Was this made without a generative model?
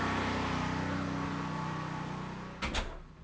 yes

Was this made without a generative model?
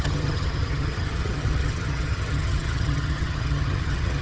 no